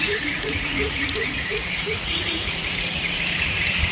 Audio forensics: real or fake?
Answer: fake